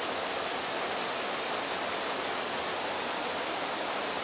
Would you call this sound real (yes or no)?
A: yes